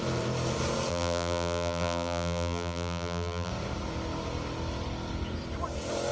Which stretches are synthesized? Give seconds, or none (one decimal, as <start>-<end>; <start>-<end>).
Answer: 0.9-3.5